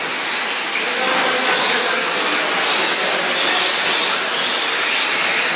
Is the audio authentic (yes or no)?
yes